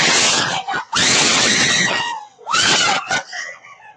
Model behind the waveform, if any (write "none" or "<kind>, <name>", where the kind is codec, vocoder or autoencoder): vocoder, WaveNeXt